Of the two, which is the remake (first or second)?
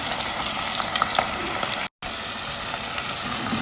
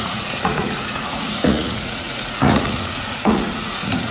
second